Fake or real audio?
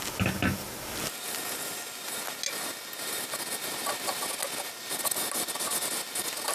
real